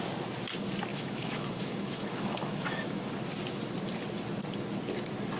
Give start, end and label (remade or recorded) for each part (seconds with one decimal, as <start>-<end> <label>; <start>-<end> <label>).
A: 0.0-0.9 recorded; 0.9-3.1 remade; 3.1-5.4 recorded